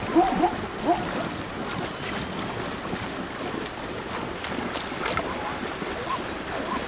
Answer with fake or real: real